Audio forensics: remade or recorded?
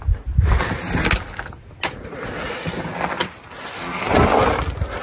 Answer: recorded